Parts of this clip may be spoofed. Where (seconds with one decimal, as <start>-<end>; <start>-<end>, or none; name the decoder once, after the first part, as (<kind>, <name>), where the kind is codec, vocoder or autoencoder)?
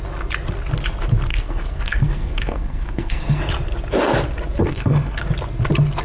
1.3-3.4 (codec, SNAC); 4.6-5.2